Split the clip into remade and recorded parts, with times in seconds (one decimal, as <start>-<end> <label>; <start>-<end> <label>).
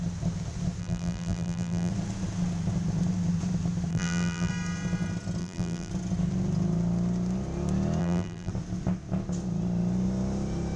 0.0-0.8 recorded; 0.8-1.9 remade; 1.9-3.9 recorded; 3.9-4.5 remade; 4.5-5.4 recorded; 5.4-5.9 remade; 5.9-8.0 recorded; 8.0-8.5 remade; 8.5-10.8 recorded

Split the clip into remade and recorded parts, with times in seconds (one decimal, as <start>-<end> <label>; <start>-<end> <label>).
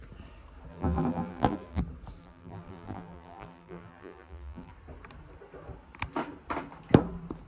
0.0-0.7 recorded; 0.7-1.8 remade; 1.8-2.2 recorded; 2.2-4.7 remade; 4.7-7.5 recorded